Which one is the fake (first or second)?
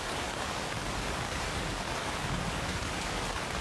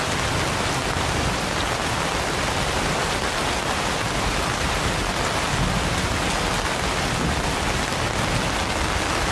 first